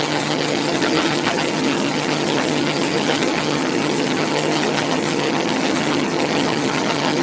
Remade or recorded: remade